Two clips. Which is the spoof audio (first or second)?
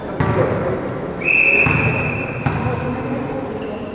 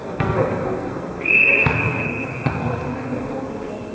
second